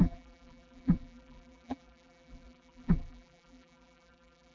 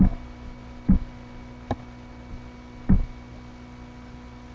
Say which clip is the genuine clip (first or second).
second